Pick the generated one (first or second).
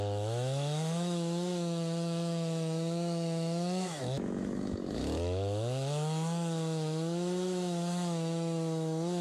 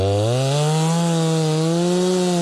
first